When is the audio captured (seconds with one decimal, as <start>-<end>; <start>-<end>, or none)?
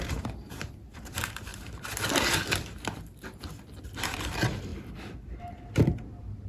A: 1.5-4.0; 4.7-5.4